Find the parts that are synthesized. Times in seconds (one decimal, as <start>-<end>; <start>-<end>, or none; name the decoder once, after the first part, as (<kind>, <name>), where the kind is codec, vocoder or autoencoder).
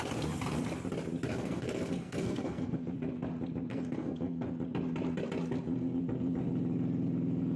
1.3-2.9 (codec, SNAC); 3.7-4.5